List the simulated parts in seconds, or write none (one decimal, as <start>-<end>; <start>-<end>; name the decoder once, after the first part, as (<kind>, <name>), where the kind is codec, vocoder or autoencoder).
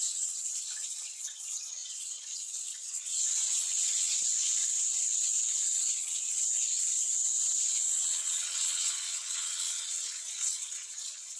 0.0-11.4 (vocoder, WaveNeXt)